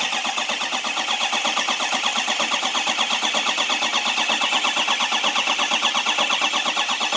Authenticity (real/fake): real